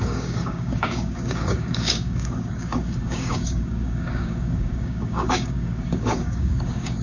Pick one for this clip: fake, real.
fake